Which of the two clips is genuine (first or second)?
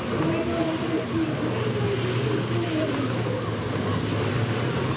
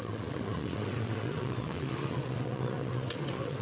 first